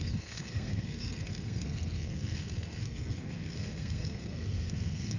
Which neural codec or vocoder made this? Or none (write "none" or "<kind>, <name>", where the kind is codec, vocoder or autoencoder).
codec, SNAC